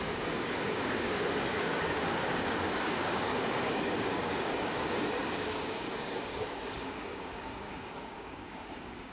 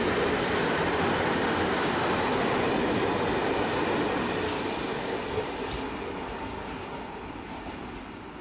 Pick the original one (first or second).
second